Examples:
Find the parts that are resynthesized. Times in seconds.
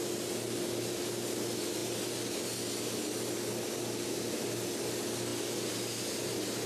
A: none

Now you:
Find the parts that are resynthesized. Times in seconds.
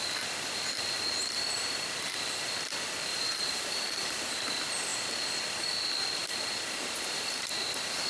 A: 3.1-4.4 (vocoder, BigVGAN v2)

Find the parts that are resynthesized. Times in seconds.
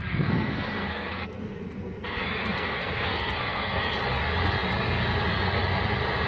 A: 0.0-3.8 (codec, SNAC)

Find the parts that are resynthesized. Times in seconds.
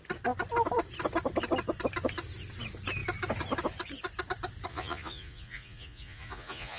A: 4.7-6.8 (vocoder, Vocos)